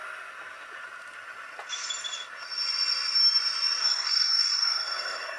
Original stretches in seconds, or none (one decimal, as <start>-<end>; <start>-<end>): 0.0-3.8